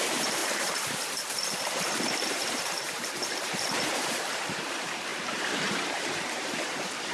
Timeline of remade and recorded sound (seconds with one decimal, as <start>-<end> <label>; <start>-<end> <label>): 0.0-7.1 remade